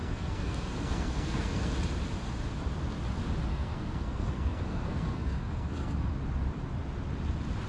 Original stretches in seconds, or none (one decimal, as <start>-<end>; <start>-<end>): 1.7-3.5; 6.1-7.7